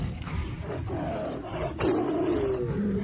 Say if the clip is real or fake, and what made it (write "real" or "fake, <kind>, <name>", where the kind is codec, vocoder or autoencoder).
real